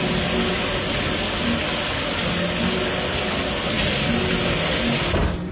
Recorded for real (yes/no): yes